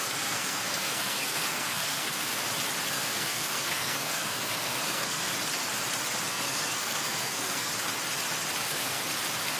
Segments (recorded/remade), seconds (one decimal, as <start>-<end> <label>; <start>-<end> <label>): 0.0-2.3 remade; 2.3-2.9 recorded; 2.9-5.3 remade; 5.3-6.3 recorded; 6.3-7.7 remade; 7.7-8.6 recorded; 8.6-9.0 remade; 9.0-9.6 recorded